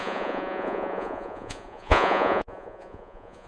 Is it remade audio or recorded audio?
remade